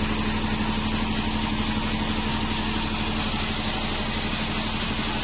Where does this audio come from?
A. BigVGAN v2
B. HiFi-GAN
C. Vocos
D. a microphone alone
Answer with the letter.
D